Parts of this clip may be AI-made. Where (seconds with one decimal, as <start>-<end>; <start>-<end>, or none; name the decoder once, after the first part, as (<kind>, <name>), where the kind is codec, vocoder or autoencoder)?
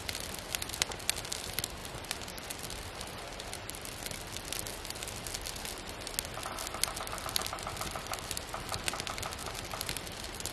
1.8-5.6 (vocoder, BigVGAN v2); 7.4-8.4; 9.4-10.5